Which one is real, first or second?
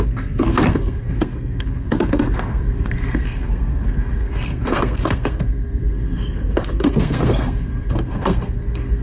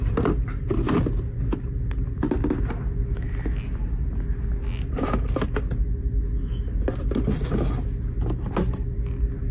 second